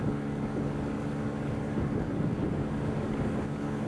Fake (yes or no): yes